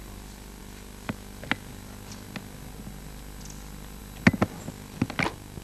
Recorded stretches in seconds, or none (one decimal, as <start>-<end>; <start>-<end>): 0.0-5.6